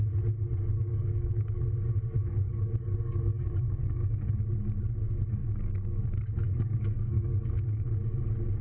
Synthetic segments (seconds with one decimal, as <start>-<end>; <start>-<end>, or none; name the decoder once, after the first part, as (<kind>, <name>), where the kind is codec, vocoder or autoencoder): 0.7-1.6 (codec, DAC); 2.2-4.2; 5.4-7.9